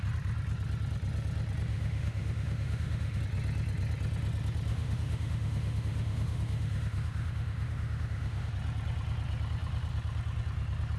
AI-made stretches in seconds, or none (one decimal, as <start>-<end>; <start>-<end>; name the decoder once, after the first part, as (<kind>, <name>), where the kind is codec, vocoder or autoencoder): 1.7-3.2 (autoencoder, DAC-VAE); 4.7-8.5